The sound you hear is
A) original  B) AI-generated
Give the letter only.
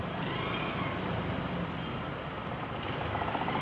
A